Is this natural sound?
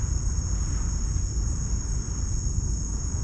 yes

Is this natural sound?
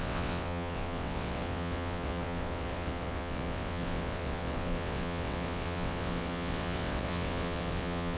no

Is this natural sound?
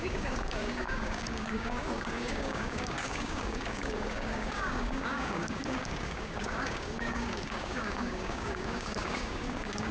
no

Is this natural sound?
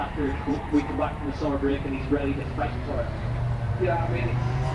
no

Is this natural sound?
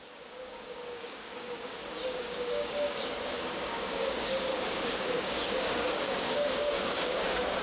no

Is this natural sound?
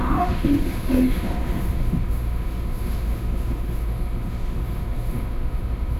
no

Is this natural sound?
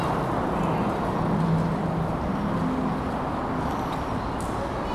yes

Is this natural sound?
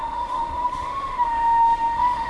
no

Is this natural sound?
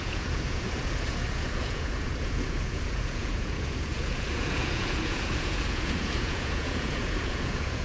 no